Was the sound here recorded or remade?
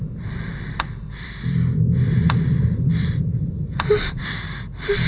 remade